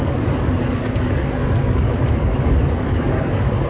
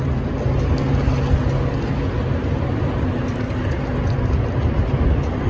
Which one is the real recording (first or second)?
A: second